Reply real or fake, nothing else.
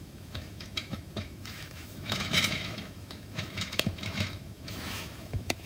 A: fake